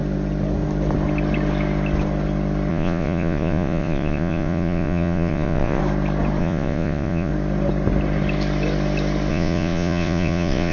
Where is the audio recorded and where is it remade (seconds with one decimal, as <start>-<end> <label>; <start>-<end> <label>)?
0.0-2.7 recorded; 2.7-5.8 remade; 5.8-6.4 recorded; 6.4-7.3 remade; 7.3-9.3 recorded; 9.3-10.7 remade